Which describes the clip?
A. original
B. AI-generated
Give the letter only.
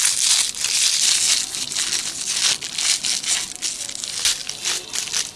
A